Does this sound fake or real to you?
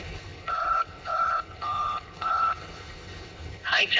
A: fake